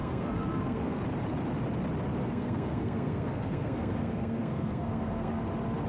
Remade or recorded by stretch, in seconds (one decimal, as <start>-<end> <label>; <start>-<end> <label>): 0.0-1.0 remade; 1.0-2.2 recorded; 2.2-5.4 remade; 5.4-5.9 recorded